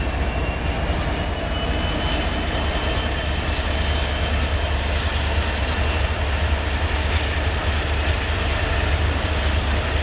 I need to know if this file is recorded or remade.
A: recorded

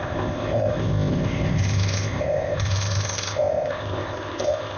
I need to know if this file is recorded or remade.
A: remade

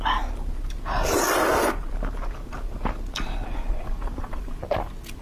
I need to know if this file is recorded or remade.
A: recorded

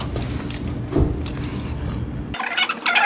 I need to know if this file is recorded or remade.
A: recorded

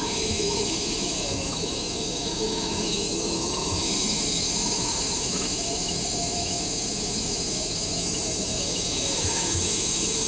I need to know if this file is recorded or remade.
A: remade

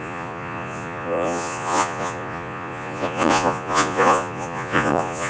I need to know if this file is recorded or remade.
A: remade